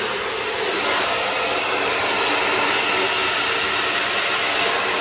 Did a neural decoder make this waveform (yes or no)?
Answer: no